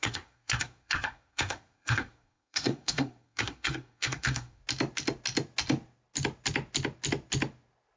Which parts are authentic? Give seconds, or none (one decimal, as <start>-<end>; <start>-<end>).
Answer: 4.6-8.0